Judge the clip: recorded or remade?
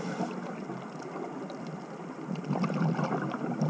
recorded